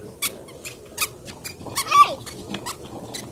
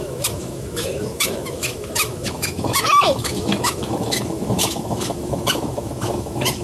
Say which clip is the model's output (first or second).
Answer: second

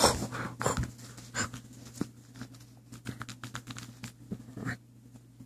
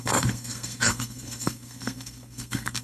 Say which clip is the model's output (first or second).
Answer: second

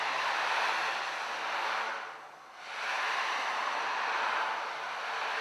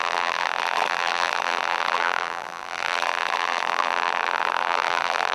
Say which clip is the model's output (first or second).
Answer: second